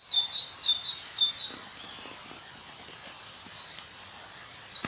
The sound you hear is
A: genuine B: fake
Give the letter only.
A